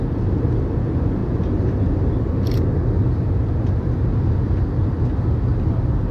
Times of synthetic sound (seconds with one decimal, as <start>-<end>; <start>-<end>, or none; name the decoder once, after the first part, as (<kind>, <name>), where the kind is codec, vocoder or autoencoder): none